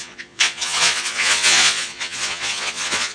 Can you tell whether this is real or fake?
fake